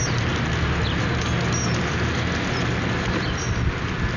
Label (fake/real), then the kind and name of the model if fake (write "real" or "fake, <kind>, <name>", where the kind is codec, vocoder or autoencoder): real